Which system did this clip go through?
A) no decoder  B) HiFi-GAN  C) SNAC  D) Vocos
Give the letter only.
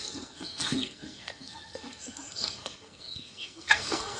C